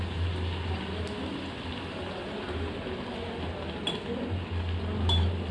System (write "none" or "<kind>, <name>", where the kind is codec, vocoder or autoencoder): none